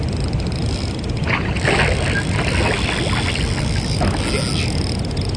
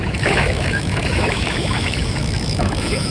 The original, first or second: first